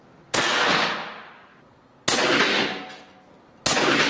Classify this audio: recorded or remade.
recorded